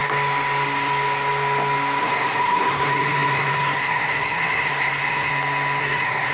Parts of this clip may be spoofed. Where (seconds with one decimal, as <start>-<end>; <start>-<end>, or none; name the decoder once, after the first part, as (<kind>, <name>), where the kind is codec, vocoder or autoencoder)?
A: 2.0-5.3 (codec, SNAC); 5.8-6.3